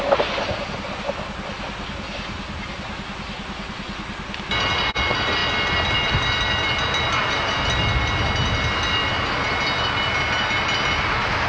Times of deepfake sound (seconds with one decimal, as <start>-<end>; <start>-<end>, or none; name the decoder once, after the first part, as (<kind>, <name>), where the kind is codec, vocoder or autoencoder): 9.0-9.6 (vocoder, BigVGAN v2)